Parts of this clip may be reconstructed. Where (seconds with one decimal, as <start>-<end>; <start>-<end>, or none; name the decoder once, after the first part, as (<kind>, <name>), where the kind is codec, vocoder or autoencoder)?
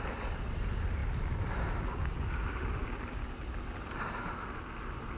none